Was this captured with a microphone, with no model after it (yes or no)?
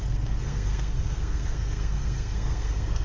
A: no